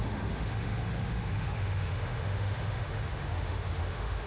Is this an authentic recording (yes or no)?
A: no